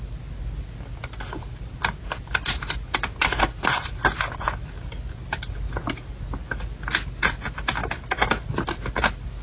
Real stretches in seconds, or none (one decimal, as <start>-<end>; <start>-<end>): 0.0-9.4